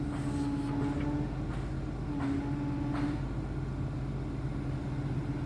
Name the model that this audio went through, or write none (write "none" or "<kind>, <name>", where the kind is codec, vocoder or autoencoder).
none